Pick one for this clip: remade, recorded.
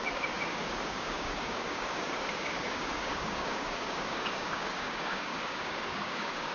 remade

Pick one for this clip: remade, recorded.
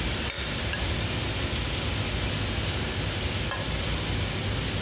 recorded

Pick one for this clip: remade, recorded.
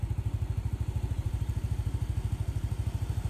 recorded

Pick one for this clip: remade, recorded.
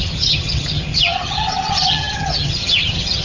remade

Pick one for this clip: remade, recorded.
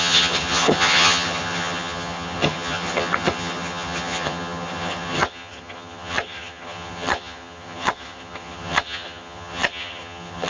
remade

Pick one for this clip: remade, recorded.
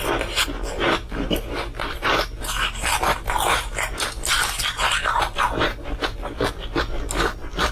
recorded